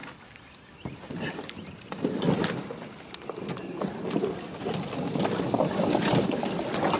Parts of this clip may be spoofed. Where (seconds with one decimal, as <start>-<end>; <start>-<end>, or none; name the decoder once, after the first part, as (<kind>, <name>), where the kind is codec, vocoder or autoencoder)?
none